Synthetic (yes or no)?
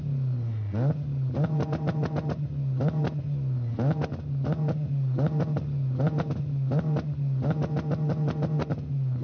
no